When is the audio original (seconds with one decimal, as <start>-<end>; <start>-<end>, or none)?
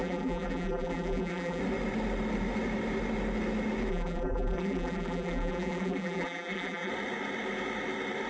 1.6-3.9; 6.9-8.3